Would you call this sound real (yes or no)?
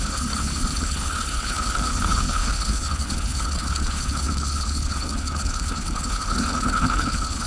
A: no